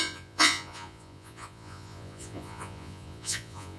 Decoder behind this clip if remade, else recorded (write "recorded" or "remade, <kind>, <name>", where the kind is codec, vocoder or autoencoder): remade, vocoder, Vocos